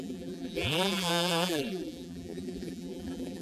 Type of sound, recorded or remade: remade